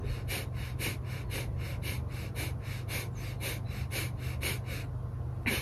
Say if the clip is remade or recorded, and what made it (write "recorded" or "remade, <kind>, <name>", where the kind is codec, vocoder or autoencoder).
recorded